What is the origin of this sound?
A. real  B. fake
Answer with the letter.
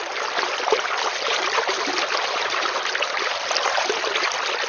A